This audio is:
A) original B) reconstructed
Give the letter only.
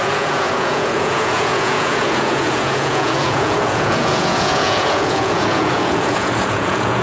B